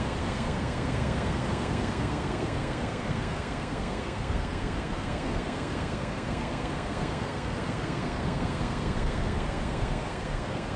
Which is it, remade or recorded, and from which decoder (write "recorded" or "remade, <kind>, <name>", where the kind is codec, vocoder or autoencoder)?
remade, codec, SNAC